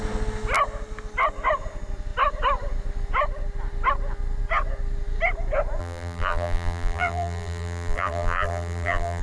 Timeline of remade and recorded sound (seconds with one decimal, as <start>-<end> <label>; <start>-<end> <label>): 0.0-5.8 recorded; 5.8-9.2 remade